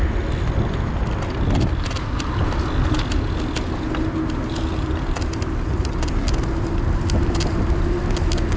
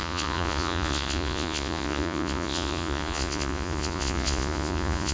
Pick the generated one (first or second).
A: second